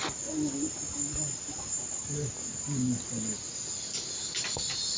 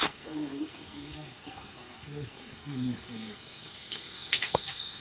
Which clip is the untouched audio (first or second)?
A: first